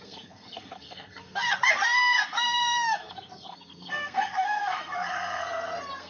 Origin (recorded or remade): remade